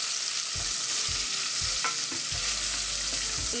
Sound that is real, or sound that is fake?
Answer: real